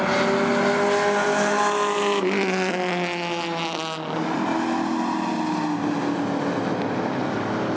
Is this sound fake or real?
real